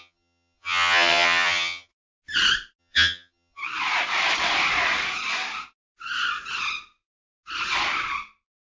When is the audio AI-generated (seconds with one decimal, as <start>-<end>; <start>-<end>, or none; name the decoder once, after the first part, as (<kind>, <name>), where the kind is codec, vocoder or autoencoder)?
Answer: 0.0-1.9 (vocoder, HiFi-GAN); 2.8-3.6